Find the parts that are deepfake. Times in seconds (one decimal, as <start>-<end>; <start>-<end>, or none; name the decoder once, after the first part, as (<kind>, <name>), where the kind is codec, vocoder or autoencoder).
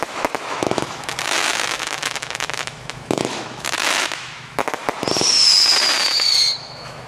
0.0-4.8 (autoencoder, DAC-VAE); 6.6-7.1